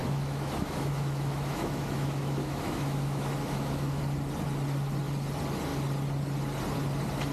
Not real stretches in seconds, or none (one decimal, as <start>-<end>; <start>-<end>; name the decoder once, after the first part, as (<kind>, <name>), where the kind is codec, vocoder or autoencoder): 0.0-4.0 (autoencoder, DAC-VAE)